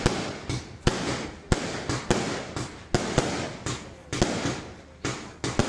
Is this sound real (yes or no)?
yes